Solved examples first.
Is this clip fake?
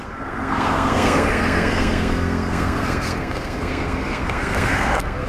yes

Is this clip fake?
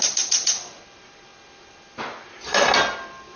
no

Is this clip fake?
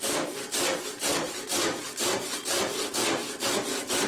no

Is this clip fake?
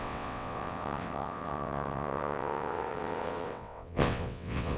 yes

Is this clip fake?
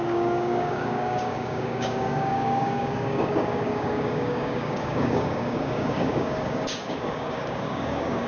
yes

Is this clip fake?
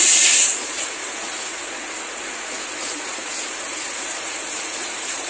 yes